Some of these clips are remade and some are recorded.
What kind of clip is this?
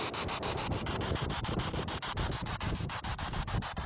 recorded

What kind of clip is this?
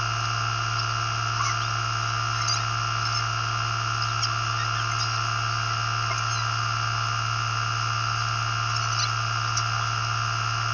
recorded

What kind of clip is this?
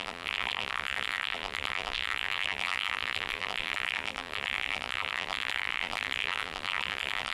remade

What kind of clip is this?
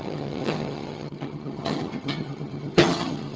remade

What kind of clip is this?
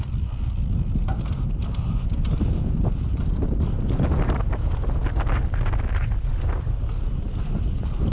recorded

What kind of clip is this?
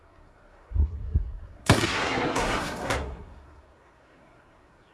remade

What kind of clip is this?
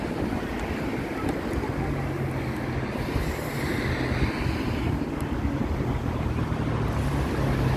recorded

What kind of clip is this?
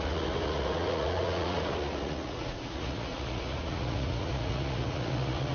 remade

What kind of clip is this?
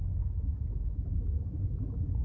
remade